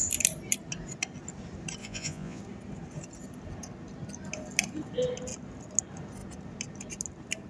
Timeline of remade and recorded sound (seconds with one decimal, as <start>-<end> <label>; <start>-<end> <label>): 0.0-1.8 recorded; 1.8-2.4 remade; 2.4-7.5 recorded